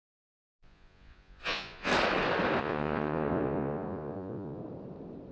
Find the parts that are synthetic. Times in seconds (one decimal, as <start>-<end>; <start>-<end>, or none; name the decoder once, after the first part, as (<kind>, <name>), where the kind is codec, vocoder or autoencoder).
0.0-1.9 (vocoder, Vocos); 2.6-4.6